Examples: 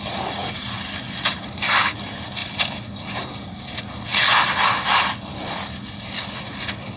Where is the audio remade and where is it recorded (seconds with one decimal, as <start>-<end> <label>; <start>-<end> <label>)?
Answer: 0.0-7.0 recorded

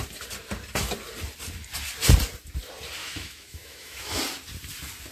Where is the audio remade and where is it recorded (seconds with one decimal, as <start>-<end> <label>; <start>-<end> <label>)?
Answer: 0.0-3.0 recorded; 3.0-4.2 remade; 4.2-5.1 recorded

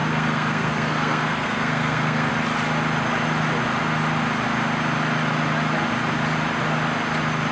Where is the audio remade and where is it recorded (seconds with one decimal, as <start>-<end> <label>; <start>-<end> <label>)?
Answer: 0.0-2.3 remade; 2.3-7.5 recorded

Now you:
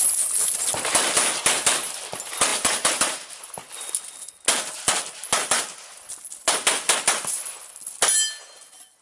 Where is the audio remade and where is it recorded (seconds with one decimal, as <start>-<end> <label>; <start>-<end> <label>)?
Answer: 0.0-2.5 recorded; 2.5-4.0 remade; 4.0-9.0 recorded

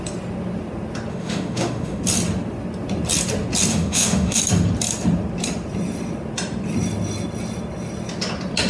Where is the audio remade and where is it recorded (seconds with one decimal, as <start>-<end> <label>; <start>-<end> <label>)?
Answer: 0.0-1.1 recorded; 1.1-2.0 remade; 2.0-3.7 recorded; 3.7-4.4 remade; 4.4-8.7 recorded